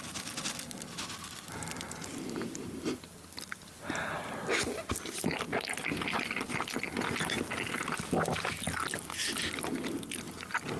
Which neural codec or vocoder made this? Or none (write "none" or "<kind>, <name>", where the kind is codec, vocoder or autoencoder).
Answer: none